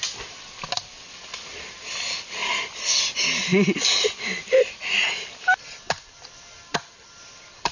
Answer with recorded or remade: recorded